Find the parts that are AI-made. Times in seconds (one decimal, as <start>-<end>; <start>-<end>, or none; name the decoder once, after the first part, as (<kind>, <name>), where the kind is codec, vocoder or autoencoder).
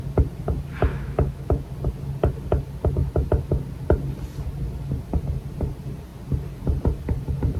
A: 0.9-1.7 (autoencoder, DAC-VAE)